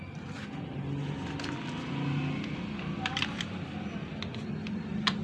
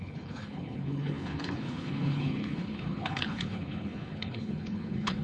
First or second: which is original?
first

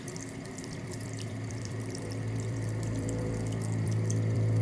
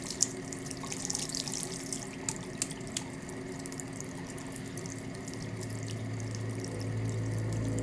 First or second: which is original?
second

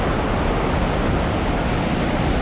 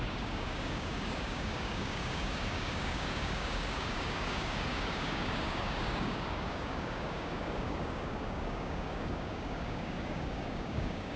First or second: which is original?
first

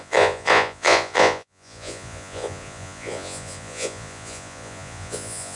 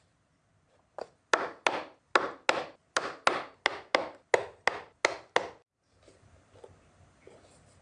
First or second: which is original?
second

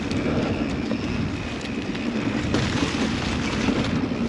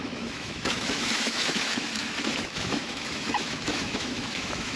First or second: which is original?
first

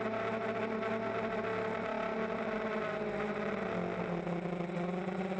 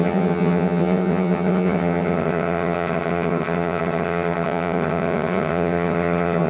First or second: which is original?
first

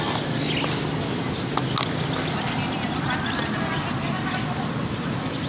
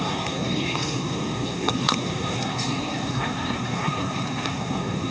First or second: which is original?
first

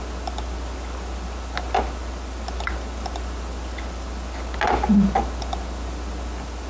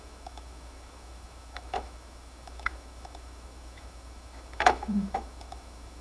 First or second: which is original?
first